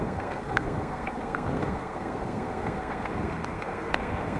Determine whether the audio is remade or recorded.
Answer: remade